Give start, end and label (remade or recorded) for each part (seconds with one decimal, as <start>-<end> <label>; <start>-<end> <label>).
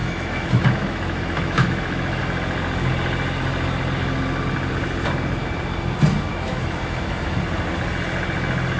0.0-2.2 remade; 2.2-6.3 recorded; 6.3-7.4 remade; 7.4-8.8 recorded